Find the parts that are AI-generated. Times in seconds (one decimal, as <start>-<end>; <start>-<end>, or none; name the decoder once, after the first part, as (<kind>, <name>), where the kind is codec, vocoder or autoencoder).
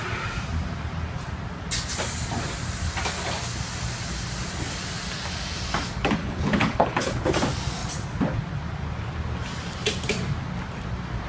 6.2-7.3 (codec, HILCodec)